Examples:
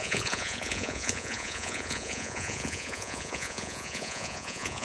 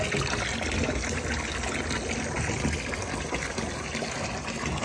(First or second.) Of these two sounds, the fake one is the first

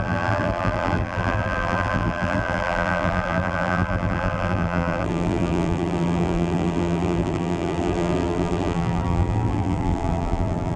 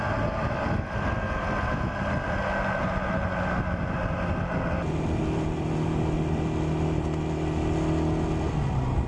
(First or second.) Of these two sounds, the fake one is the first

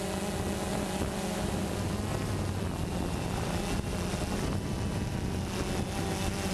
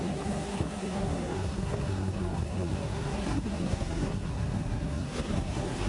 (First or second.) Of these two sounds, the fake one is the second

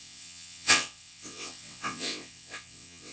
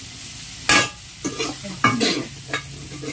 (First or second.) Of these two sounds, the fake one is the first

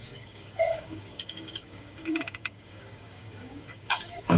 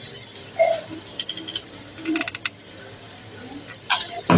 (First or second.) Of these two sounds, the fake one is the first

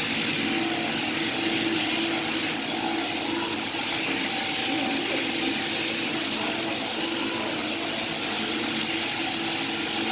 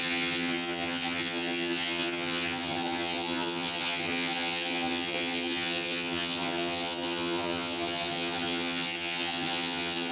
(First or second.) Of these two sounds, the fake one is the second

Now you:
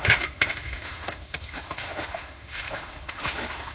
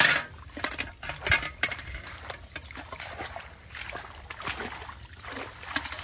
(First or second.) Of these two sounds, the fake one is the first